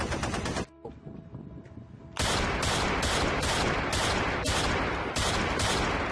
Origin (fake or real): real